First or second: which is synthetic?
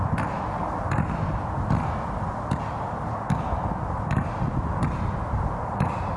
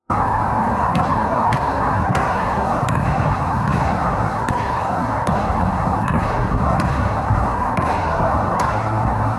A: second